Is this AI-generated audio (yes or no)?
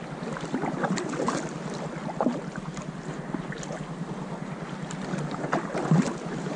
no